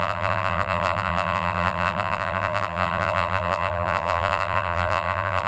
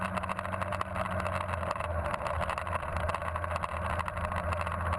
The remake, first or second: first